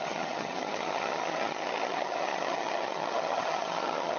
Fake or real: fake